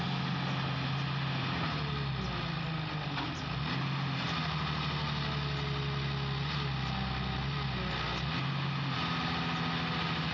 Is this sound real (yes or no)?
yes